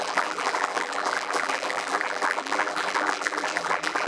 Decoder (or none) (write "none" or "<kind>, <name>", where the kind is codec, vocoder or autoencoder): vocoder, BigVGAN v2